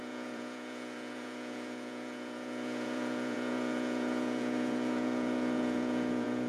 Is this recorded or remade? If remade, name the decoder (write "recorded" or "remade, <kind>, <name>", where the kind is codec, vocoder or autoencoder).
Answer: remade, vocoder, Vocos